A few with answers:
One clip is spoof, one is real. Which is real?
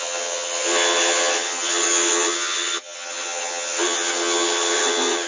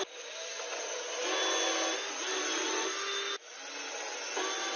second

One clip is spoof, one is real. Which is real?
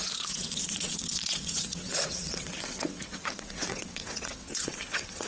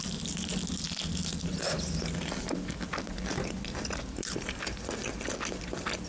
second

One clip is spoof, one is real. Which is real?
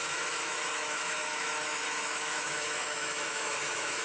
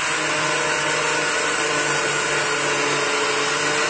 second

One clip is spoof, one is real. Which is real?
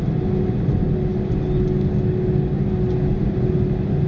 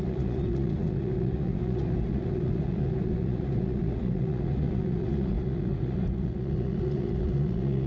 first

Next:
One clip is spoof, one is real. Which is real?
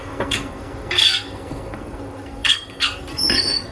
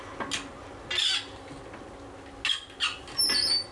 second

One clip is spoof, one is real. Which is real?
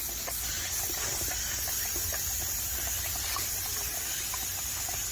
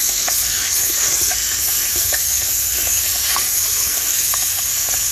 first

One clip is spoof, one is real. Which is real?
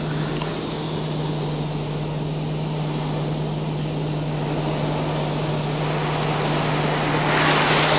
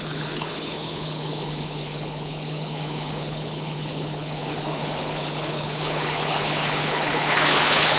first